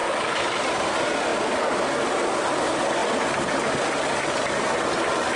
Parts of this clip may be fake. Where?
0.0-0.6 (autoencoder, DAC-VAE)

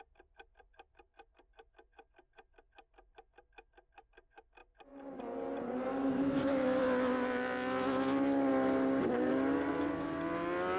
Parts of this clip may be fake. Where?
none

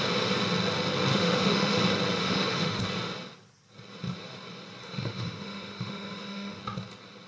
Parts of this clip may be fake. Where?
1.1-1.8 (autoencoder, DAC-VAE); 2.2-2.8; 4.8-6.6

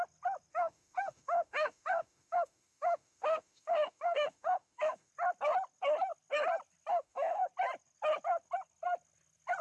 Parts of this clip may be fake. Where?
0.5-5.1 (autoencoder, DAC-VAE); 6.9-7.5

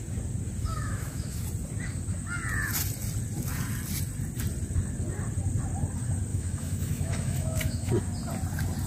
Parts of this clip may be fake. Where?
0.7-1.4 (autoencoder, DAC-VAE); 6.3-7.9

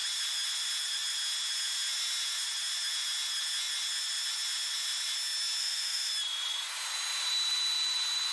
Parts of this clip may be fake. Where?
5.6-6.1 (autoencoder, DAC-VAE)

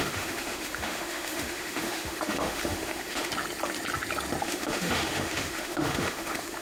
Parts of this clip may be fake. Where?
0.0-3.3 (autoencoder, DAC-VAE); 4.4-6.6